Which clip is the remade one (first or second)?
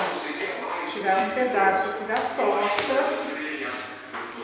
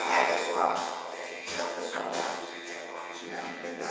second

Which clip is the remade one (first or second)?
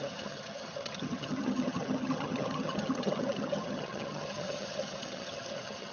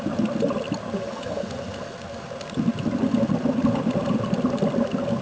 first